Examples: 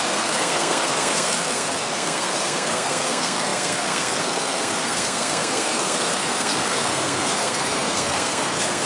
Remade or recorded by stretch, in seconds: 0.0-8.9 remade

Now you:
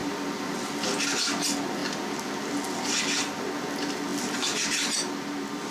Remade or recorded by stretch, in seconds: 0.0-5.7 recorded

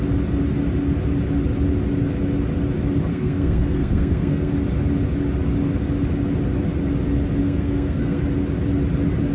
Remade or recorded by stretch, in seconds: 0.0-3.1 recorded; 3.1-4.5 remade; 4.5-7.4 recorded; 7.4-8.2 remade; 8.2-9.3 recorded

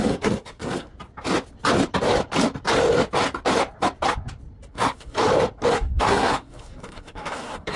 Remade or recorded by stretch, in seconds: 0.0-0.9 remade; 0.9-4.7 recorded; 4.7-5.2 remade; 5.2-5.7 recorded; 5.7-7.8 remade

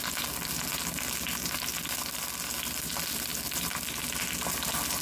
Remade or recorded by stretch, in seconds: 0.0-5.0 recorded